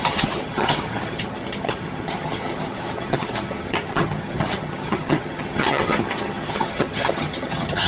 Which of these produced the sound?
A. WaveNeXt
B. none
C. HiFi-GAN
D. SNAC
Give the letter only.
C